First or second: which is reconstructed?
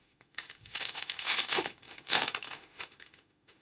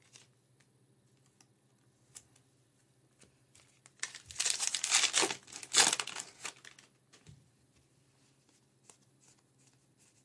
first